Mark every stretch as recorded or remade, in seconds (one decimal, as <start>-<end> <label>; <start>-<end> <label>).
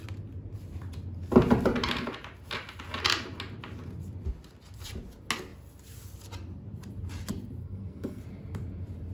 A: 0.0-7.6 recorded; 7.6-8.2 remade; 8.2-9.1 recorded